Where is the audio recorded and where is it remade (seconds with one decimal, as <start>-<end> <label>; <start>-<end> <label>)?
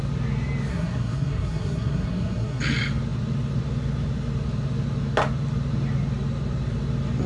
0.0-0.7 recorded; 0.7-2.6 remade; 2.6-7.3 recorded